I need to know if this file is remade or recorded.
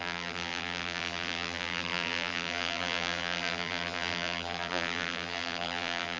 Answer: remade